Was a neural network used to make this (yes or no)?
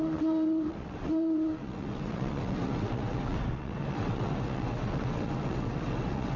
yes